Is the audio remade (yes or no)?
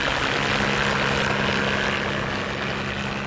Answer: no